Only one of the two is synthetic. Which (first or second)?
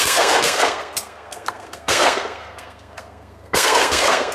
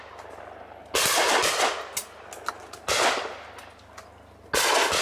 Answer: first